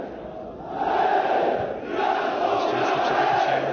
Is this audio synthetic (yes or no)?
no